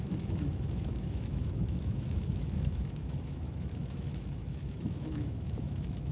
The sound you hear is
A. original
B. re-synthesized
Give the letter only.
B